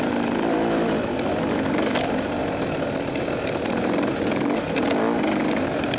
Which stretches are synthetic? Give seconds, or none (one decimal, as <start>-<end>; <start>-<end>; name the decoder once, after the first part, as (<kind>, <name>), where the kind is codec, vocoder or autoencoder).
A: none